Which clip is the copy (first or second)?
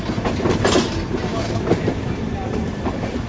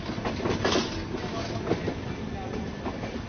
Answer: first